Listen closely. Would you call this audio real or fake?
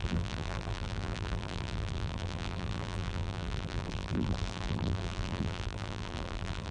fake